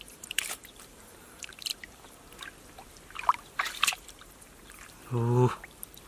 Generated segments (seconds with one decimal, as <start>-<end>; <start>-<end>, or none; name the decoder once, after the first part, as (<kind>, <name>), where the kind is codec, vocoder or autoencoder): 0.0-1.7 (vocoder, BigVGAN v2); 3.6-5.0